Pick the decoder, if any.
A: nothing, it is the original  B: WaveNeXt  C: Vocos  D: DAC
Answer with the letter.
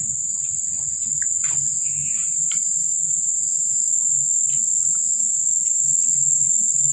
A